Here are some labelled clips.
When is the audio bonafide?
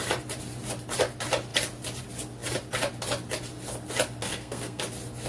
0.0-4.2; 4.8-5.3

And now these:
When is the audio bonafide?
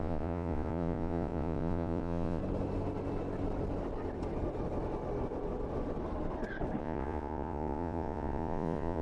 2.4-6.8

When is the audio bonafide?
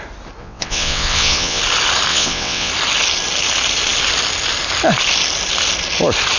0.0-0.4; 1.6-2.1; 2.7-6.4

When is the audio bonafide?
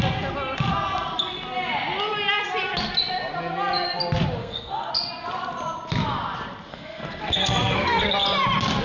0.0-4.4; 4.9-6.7; 8.0-8.8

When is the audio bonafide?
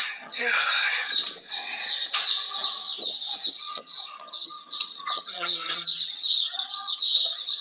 0.4-3.6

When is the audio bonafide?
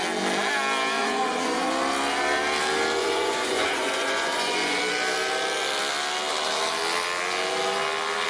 0.0-1.0; 1.7-3.0; 4.8-8.3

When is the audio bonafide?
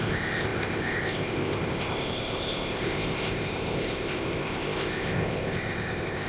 none